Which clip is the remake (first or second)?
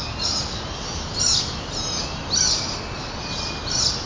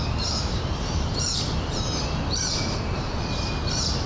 second